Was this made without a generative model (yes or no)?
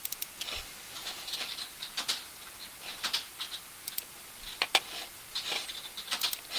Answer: yes